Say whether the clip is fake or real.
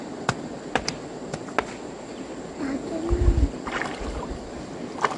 real